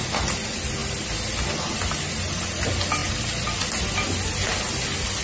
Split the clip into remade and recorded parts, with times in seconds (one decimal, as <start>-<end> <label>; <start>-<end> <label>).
0.0-5.2 recorded